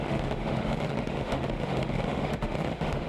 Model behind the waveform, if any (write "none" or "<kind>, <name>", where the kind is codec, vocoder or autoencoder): autoencoder, DAC-VAE